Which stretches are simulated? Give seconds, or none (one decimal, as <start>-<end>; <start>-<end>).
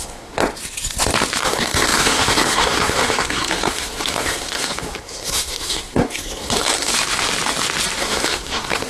0.0-0.4; 1.4-6.9; 8.0-8.9